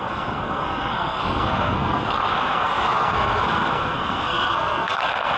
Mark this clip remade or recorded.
remade